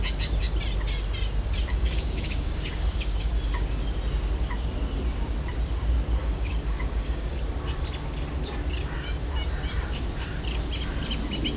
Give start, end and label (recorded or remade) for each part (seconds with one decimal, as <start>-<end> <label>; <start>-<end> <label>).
0.0-1.7 recorded; 1.7-3.3 remade; 3.3-6.2 recorded; 6.2-7.4 remade; 7.4-11.6 recorded